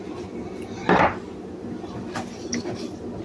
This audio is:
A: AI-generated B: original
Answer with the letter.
A